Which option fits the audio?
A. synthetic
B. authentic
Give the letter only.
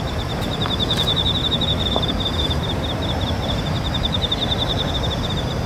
A